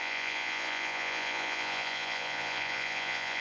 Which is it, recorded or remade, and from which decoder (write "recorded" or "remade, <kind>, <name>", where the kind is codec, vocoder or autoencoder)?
remade, vocoder, Vocos